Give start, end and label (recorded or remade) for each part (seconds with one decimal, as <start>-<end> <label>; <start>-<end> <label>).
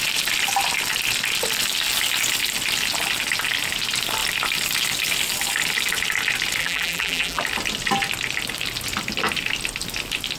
0.0-6.6 recorded; 6.6-7.4 remade; 7.4-10.4 recorded